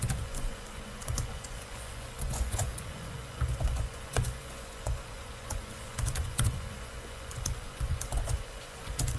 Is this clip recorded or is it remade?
remade